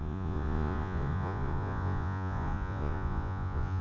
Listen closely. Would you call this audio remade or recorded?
remade